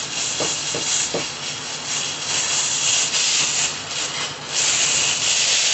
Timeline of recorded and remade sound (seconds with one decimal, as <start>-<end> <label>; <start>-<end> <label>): 0.0-5.7 recorded